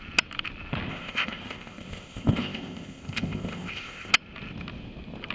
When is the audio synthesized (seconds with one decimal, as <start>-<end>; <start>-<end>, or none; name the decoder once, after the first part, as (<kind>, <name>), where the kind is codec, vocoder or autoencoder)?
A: 0.9-4.1 (codec, ZipCodec)